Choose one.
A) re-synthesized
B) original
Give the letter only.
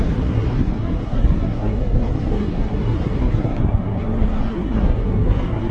A